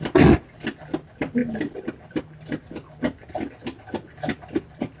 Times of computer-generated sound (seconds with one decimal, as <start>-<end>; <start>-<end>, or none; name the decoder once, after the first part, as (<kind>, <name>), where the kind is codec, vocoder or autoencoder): none